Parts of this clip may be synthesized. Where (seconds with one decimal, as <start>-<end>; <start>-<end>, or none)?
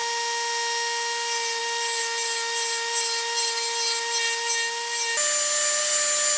none